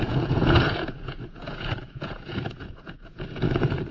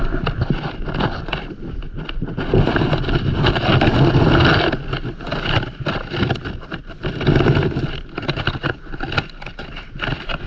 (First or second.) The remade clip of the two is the first